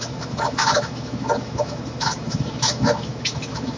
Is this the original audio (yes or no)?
no